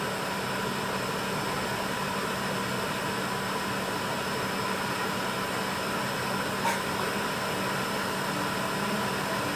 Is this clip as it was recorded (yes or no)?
yes